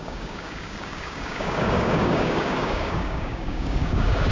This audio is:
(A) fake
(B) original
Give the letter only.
A